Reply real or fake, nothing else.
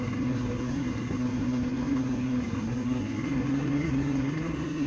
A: fake